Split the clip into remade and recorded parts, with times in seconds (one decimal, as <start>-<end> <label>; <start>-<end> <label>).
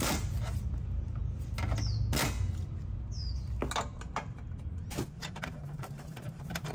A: 0.0-1.2 remade; 1.2-5.2 recorded; 5.2-6.7 remade